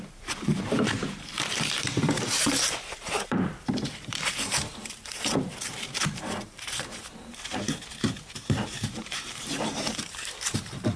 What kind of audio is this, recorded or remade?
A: remade